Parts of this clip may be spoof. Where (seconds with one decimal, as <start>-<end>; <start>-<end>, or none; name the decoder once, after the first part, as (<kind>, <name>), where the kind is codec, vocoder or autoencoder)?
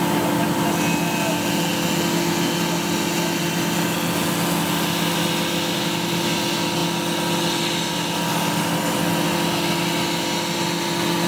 none